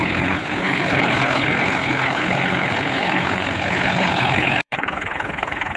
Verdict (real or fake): fake